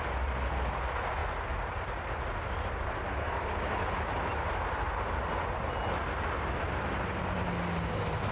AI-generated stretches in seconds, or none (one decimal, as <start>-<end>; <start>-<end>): none